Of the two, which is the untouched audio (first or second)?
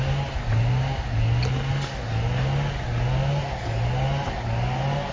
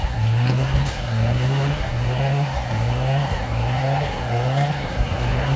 first